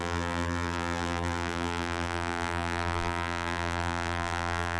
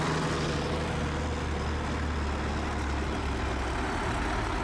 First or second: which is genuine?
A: second